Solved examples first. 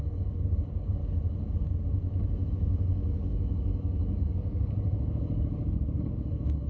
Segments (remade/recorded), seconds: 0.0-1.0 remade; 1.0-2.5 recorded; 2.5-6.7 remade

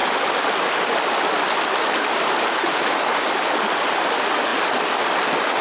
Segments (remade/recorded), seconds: 0.0-5.6 recorded

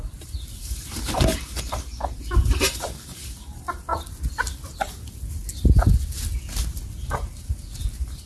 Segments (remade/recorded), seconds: 0.0-3.9 remade; 3.9-7.0 recorded; 7.0-8.3 remade

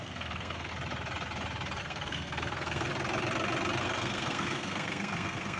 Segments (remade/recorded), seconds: 0.0-0.7 remade; 0.7-1.8 recorded; 1.8-2.9 remade; 2.9-3.8 recorded; 3.8-5.6 remade

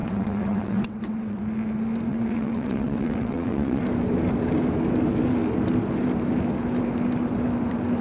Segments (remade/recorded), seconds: 0.0-1.4 remade; 1.4-2.1 recorded; 2.1-3.8 remade; 3.8-8.0 recorded